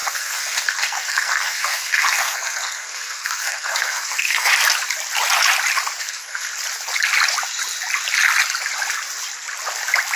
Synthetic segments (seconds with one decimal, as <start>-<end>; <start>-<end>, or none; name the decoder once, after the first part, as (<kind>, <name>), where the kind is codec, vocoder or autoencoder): 0.0-4.5 (codec, SNAC); 6.0-6.5